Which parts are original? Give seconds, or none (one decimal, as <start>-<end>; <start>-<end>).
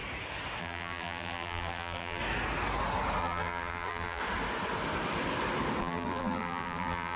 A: 0.0-0.6; 2.2-3.2; 4.2-5.8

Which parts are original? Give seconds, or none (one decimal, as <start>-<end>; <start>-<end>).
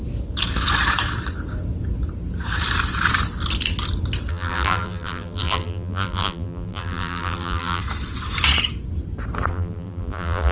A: 0.0-4.3; 7.8-9.5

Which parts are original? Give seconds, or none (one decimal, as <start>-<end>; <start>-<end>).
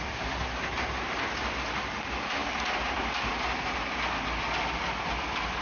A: 0.0-5.6